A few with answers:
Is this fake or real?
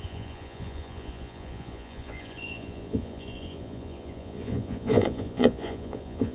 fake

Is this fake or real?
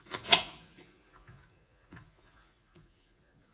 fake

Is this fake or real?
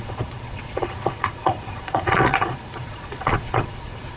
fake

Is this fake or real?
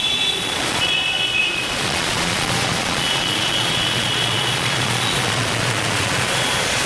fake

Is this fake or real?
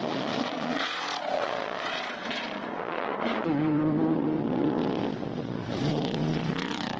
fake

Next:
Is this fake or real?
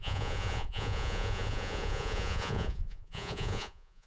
fake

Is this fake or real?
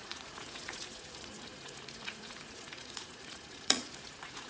fake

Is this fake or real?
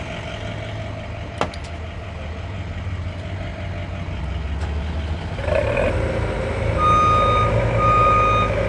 real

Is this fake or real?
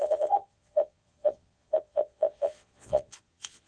fake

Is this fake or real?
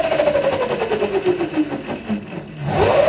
real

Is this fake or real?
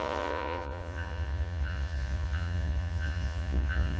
fake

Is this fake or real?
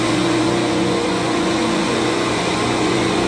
fake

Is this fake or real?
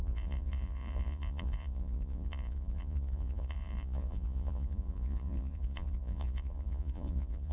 fake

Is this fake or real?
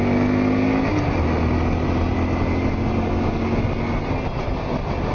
real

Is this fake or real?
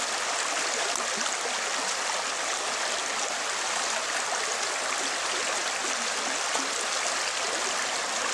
real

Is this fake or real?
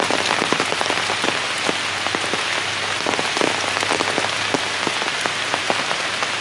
real